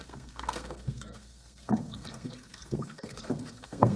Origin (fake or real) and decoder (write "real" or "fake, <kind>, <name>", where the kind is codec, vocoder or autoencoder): fake, codec, SNAC